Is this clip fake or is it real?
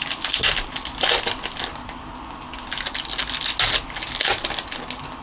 real